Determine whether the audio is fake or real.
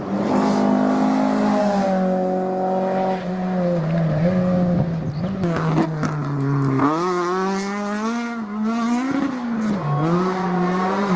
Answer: real